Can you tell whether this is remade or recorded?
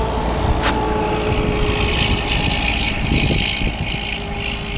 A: recorded